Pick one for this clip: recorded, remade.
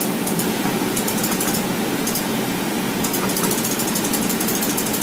remade